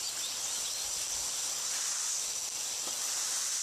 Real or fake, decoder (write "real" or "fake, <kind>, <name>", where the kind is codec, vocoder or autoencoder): real